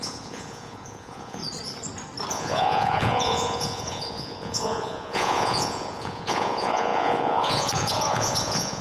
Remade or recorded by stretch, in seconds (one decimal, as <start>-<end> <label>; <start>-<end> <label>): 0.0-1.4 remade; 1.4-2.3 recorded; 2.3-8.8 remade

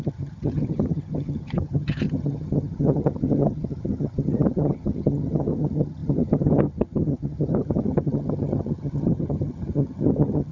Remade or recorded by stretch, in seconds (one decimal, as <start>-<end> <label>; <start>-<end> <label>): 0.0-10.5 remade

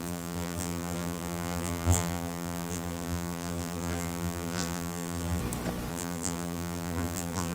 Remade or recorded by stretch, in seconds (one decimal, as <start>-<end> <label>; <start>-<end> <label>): 0.0-5.4 remade; 5.4-5.9 recorded; 5.9-7.5 remade

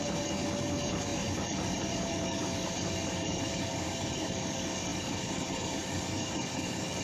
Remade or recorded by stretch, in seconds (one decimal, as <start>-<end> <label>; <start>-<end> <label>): 0.0-7.0 remade

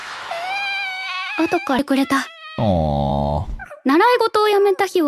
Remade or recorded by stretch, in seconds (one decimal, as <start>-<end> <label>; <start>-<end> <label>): 0.0-3.1 remade; 3.1-5.1 recorded